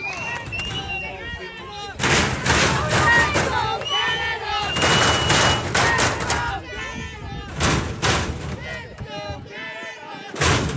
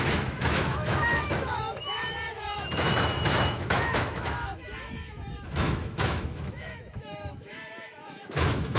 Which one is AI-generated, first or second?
second